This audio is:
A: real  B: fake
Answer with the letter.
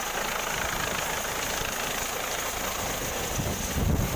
A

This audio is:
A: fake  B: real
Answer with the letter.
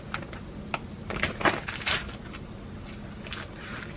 B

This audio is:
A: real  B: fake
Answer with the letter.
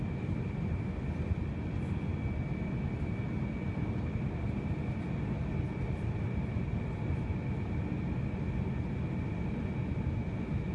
A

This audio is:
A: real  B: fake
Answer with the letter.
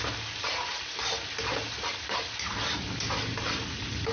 A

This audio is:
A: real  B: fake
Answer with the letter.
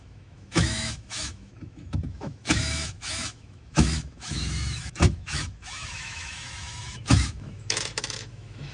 B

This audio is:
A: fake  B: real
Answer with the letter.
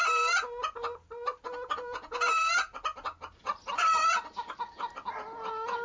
B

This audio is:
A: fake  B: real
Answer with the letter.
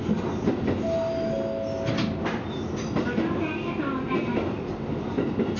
B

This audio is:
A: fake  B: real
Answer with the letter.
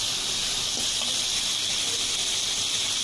B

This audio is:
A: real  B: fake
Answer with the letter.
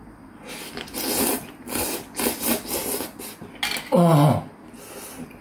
A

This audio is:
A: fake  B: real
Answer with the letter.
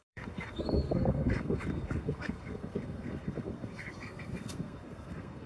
A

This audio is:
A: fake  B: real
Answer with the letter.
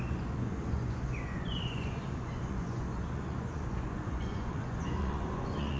A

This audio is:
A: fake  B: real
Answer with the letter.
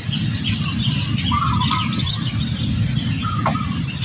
B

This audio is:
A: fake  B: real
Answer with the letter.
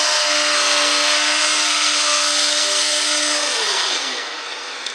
A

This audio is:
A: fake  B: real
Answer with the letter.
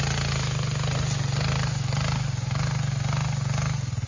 B